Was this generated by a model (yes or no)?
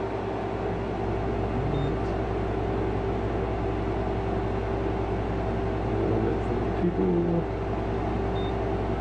no